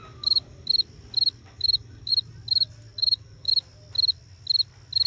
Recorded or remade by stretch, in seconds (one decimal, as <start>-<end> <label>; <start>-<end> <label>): 0.0-0.7 remade; 0.7-1.4 recorded; 1.4-2.1 remade; 2.1-3.0 recorded; 3.0-3.5 remade; 3.5-5.1 recorded

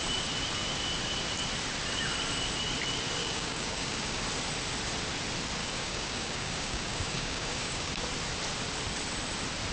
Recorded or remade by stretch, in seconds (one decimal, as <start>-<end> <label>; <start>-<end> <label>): 0.0-3.2 recorded; 3.2-4.2 remade; 4.2-5.6 recorded; 5.6-7.9 remade; 7.9-9.7 recorded

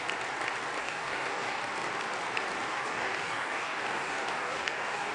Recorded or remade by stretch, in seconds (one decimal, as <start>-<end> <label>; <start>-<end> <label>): 0.0-0.8 recorded; 0.8-1.6 remade; 1.6-2.7 recorded; 2.7-5.1 remade

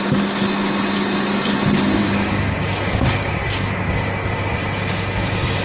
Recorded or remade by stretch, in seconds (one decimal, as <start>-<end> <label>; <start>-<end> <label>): 0.0-2.0 recorded; 2.0-4.4 remade; 4.4-5.6 recorded

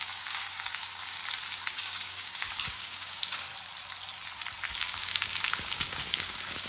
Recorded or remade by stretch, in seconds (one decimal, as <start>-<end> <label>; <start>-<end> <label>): 0.0-1.2 remade; 1.2-1.7 recorded; 1.7-3.5 remade; 3.5-4.7 recorded; 4.7-6.7 remade

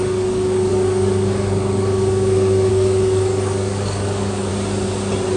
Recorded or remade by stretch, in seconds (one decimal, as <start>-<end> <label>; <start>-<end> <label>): 0.0-4.5 remade; 4.5-5.4 recorded

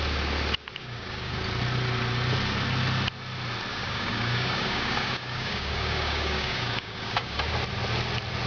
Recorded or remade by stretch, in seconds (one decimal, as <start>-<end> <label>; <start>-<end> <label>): 0.0-0.8 recorded; 0.8-1.4 remade; 1.4-3.7 recorded; 3.7-7.5 remade; 7.5-8.5 recorded